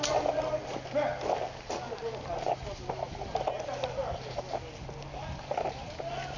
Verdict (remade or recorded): recorded